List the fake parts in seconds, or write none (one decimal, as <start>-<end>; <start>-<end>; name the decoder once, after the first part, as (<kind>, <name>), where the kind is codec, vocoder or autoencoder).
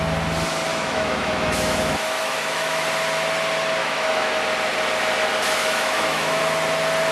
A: 0.7-2.8 (autoencoder, DAC-VAE); 3.8-4.3; 5.6-6.4